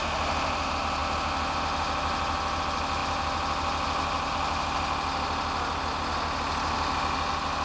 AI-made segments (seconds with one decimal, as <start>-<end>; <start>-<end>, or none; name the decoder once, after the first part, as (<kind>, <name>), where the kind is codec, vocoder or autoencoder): none